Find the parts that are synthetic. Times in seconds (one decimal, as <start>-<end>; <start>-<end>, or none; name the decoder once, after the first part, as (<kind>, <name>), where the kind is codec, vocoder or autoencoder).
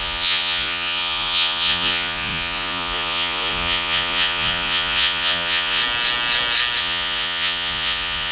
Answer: 0.0-5.8 (vocoder, Vocos); 6.8-8.3